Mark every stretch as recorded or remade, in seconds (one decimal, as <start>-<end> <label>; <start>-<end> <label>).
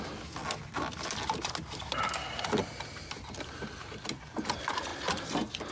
0.0-5.7 recorded